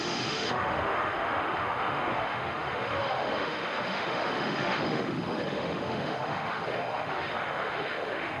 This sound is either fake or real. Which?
fake